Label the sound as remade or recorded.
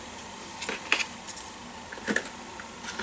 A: recorded